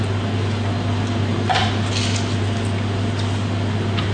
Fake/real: real